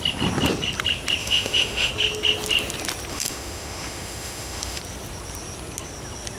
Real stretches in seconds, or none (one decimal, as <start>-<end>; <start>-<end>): 0.0-1.2; 1.9-3.1; 4.8-6.4